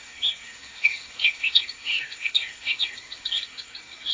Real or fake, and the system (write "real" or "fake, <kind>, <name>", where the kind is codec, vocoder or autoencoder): fake, codec, SNAC